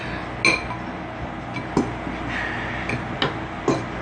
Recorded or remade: recorded